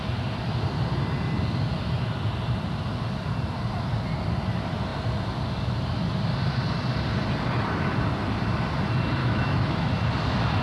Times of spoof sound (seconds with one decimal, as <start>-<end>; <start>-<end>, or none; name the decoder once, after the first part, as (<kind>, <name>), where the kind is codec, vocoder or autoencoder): 9.2-9.9 (autoencoder, DAC-VAE)